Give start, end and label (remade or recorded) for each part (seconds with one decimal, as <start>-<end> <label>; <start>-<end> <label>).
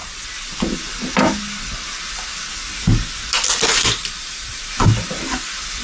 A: 0.0-3.7 recorded; 3.7-4.6 remade; 4.6-5.8 recorded